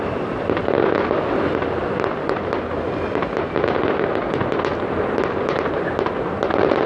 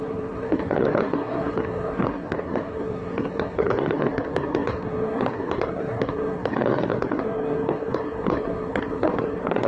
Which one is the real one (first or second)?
first